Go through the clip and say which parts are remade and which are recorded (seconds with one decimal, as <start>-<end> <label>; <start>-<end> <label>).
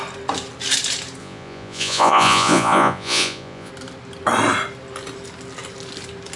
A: 0.0-1.2 recorded; 1.2-3.7 remade; 3.7-6.4 recorded